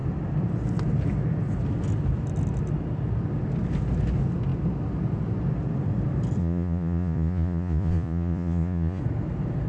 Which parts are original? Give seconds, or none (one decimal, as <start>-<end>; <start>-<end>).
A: 0.0-6.4; 9.0-9.7